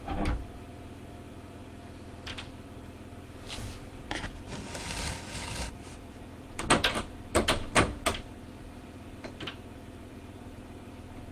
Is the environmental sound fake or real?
fake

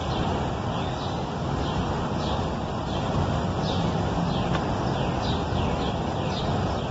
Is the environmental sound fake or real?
real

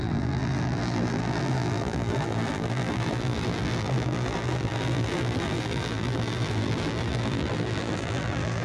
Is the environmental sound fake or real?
fake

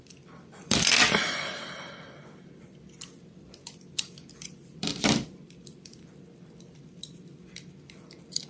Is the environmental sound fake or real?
fake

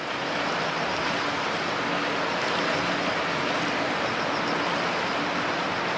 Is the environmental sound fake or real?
real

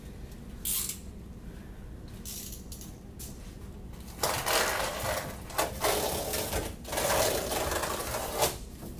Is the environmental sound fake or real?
real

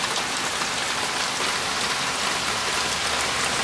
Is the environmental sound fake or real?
real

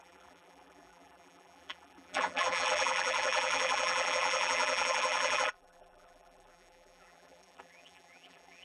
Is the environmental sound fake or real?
fake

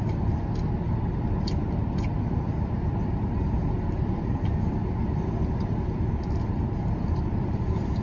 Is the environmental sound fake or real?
fake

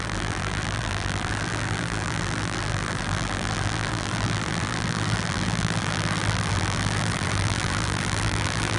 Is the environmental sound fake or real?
fake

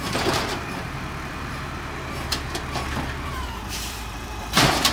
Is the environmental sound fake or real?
fake